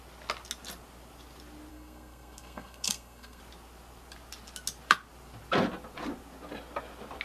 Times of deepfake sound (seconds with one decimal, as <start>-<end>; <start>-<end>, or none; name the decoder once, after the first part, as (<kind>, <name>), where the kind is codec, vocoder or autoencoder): 1.7-3.4 (codec, SNAC)